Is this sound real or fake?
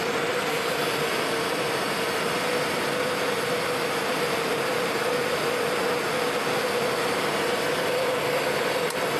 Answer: real